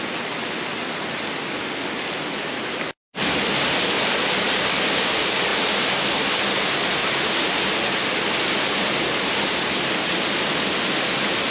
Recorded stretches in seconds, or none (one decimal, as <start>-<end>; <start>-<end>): 0.0-11.5